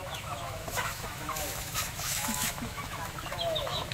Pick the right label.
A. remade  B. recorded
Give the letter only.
A